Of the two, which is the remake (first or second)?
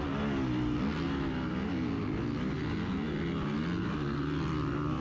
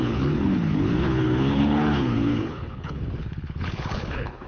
second